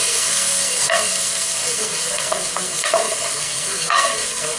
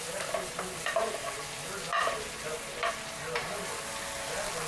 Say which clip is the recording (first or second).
second